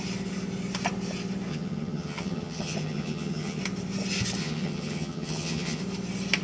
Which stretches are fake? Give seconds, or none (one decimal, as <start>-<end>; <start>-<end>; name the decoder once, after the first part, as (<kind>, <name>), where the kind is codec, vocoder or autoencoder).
1.5-3.6 (vocoder, HiFi-GAN); 4.4-5.8